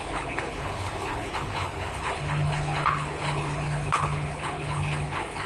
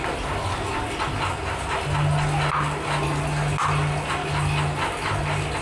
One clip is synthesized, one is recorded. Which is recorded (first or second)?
second